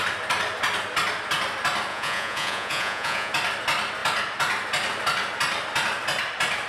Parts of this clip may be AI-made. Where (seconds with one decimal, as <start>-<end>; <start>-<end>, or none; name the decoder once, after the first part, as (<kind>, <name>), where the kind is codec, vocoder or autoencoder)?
1.9-3.3 (vocoder, Vocos)

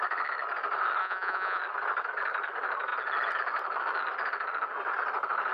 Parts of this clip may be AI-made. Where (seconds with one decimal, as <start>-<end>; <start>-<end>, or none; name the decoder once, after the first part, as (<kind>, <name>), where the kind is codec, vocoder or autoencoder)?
1.0-1.6 (vocoder, Vocos)

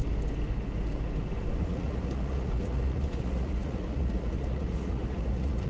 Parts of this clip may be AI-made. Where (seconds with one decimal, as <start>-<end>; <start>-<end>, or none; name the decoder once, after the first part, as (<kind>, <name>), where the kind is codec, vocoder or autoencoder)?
1.6-5.7 (vocoder, Vocos)

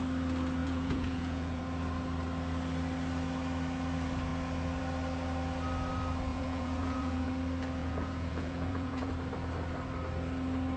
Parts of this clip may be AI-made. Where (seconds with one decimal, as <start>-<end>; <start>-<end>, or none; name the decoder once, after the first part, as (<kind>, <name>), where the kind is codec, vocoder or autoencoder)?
0.6-1.6 (vocoder, Vocos); 6.3-7.3; 7.8-9.1

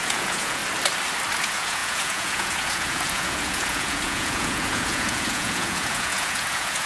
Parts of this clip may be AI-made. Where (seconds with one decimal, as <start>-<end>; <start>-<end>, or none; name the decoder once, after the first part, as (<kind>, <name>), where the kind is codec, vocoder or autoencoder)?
0.0-0.6 (vocoder, Vocos); 1.4-6.9

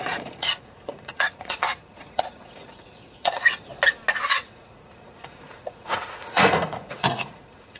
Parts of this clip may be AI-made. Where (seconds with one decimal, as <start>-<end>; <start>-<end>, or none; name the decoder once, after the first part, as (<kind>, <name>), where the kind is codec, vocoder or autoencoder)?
0.0-3.7 (vocoder, Vocos); 4.3-7.8

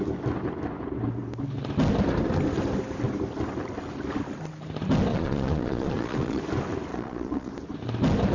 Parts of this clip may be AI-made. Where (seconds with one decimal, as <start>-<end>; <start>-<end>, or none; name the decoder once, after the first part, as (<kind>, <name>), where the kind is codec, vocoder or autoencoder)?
5.1-6.4 (vocoder, Vocos); 6.9-7.5

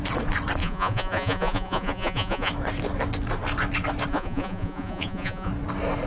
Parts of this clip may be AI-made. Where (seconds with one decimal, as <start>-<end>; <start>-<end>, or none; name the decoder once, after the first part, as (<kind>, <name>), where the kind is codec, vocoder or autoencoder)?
0.6-2.5 (vocoder, Vocos); 4.1-5.5